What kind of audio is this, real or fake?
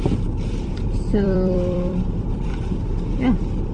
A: fake